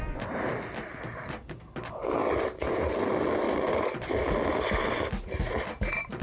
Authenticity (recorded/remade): recorded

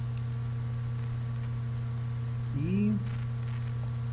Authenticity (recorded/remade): recorded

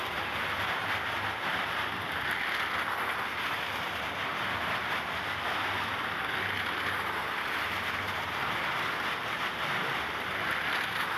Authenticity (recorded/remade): recorded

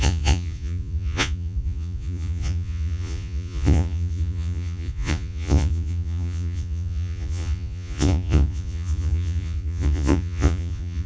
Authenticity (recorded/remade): remade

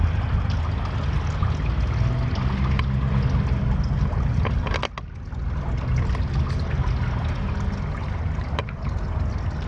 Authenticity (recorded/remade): recorded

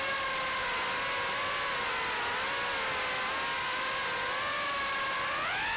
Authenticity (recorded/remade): recorded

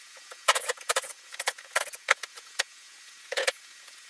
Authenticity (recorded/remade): remade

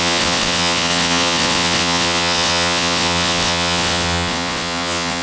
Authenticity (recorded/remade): remade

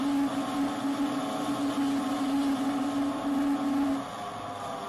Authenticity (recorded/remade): recorded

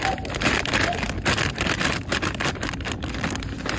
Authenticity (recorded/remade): remade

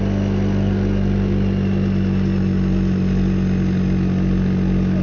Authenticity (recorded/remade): recorded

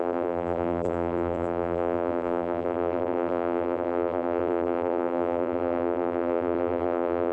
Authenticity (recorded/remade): remade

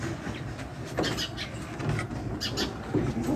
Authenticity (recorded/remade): recorded